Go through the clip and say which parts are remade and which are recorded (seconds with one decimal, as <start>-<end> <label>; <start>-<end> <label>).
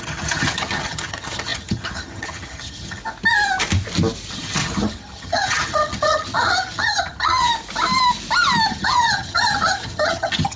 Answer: 0.0-3.0 remade; 3.0-4.3 recorded; 4.3-7.5 remade; 7.5-8.7 recorded; 8.7-10.6 remade